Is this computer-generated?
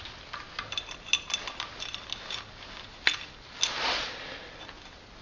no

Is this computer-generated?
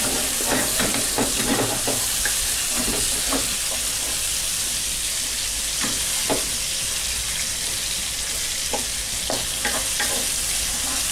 no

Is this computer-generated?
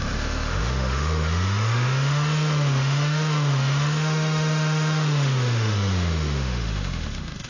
yes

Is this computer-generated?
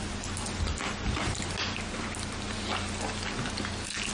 no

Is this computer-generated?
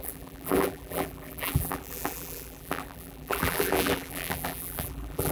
yes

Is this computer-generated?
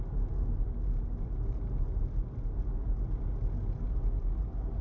no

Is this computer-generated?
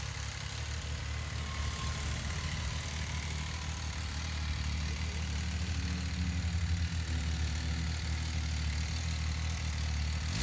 no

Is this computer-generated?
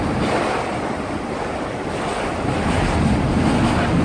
no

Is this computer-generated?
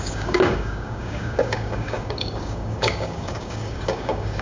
yes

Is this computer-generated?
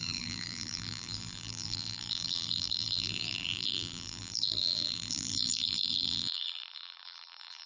yes